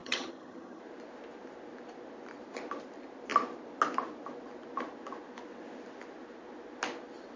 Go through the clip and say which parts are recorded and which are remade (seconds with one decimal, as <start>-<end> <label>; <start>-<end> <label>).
0.0-0.8 remade; 0.8-7.4 recorded